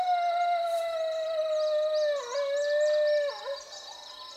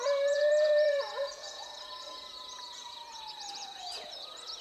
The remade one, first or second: second